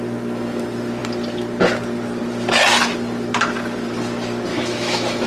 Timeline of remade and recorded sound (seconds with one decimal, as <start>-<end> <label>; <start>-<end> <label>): 0.0-4.5 recorded; 4.5-5.3 remade